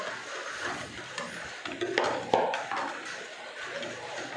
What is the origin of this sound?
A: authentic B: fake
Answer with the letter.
A